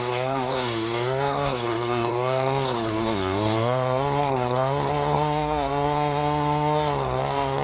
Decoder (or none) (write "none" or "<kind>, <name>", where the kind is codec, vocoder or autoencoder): codec, SNAC